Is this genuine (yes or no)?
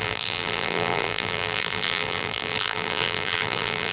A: no